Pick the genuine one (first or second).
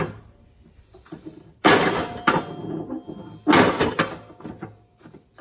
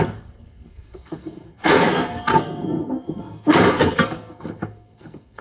first